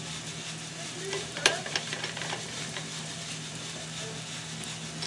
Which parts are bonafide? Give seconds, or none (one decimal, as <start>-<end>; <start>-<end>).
0.0-0.7; 3.8-5.1